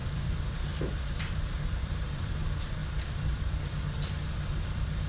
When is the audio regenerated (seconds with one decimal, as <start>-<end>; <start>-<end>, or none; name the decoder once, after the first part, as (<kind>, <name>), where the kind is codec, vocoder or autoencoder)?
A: 0.0-5.1 (vocoder, BigVGAN v2)